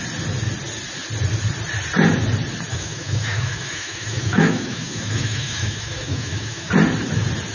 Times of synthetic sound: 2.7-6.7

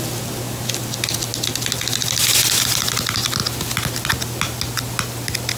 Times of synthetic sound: none

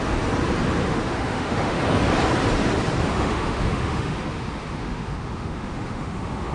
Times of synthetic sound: 0.8-1.8; 3.1-6.5